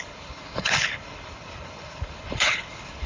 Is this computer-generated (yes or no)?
yes